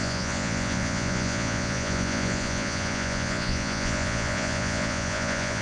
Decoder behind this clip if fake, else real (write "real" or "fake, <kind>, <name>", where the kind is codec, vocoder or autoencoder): fake, vocoder, Vocos